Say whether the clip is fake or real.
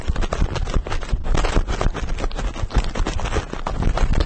real